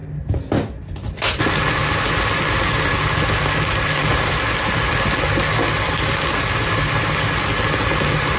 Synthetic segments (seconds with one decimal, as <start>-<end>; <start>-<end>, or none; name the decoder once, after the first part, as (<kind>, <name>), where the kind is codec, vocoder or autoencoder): none